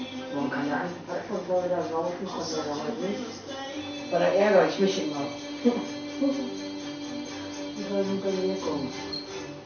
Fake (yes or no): no